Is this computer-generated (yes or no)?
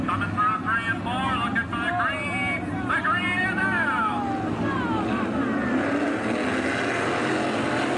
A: no